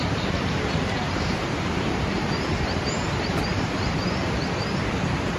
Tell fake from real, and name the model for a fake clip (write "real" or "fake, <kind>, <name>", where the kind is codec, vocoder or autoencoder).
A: fake, vocoder, BigVGAN v2